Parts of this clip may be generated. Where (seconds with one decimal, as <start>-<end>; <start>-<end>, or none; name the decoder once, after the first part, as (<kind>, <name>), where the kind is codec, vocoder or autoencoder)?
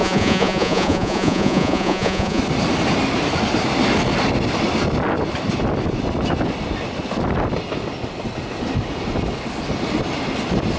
0.0-2.4 (vocoder, Vocos)